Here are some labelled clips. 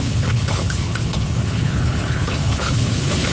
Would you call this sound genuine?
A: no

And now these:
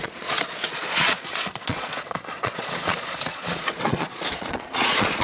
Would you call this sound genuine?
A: no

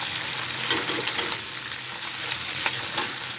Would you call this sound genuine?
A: yes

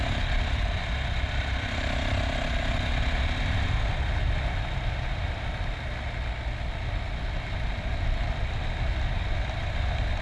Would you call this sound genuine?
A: yes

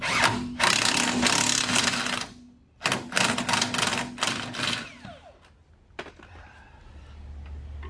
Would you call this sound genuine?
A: yes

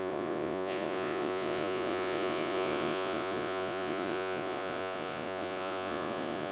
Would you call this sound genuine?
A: no